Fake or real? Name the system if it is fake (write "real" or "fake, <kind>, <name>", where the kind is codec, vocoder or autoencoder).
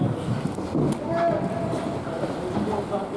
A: real